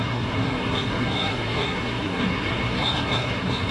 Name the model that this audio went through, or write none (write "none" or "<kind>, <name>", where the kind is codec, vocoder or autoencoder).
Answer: codec, SNAC